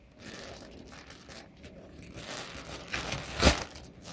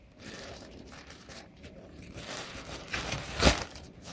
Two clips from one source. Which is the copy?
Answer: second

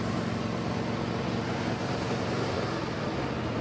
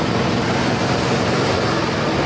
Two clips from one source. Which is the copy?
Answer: second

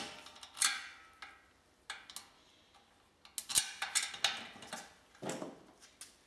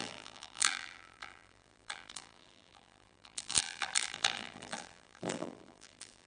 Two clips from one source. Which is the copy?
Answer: second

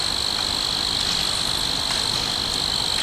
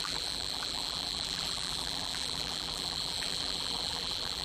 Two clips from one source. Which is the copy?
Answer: second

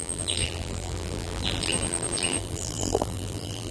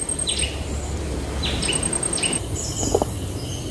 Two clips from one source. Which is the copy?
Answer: first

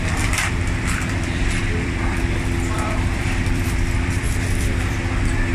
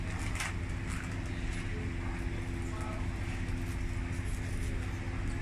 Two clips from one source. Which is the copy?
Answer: first